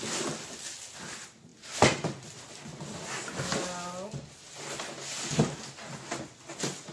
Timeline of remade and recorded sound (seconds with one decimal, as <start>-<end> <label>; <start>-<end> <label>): 0.0-6.9 recorded